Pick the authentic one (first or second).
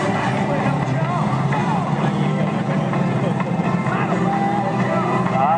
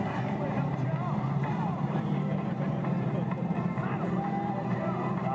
first